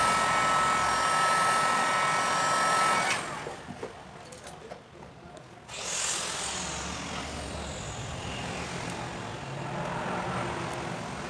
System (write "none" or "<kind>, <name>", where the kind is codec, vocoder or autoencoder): none